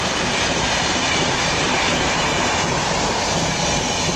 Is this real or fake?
real